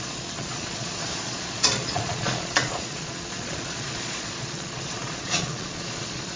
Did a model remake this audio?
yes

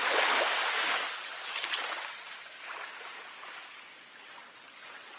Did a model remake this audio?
no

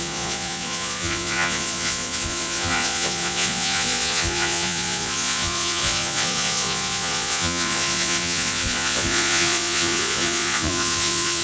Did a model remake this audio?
yes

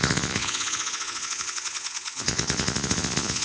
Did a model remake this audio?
yes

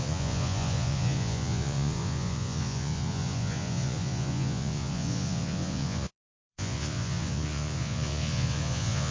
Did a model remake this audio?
yes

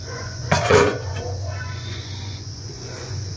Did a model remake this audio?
yes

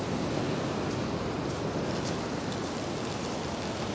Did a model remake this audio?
no